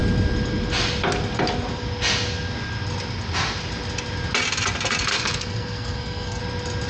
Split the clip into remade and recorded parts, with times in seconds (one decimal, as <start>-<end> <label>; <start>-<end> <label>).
0.0-5.1 recorded; 5.1-6.4 remade; 6.4-6.9 recorded